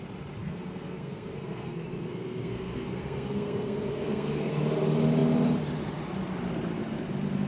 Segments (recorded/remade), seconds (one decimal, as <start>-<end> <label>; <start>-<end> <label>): 0.0-0.4 recorded; 0.4-4.5 remade; 4.5-7.5 recorded